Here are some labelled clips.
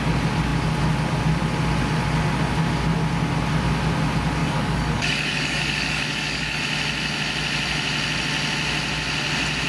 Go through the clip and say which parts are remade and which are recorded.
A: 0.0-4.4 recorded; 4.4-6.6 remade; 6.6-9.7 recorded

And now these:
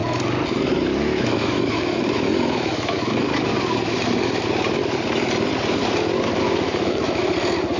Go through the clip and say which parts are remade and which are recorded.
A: 0.0-1.0 recorded; 1.0-3.5 remade; 3.5-6.4 recorded; 6.4-7.2 remade; 7.2-7.8 recorded

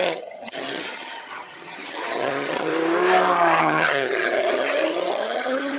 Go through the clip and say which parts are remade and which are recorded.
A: 0.0-2.7 remade; 2.7-3.6 recorded; 3.6-5.8 remade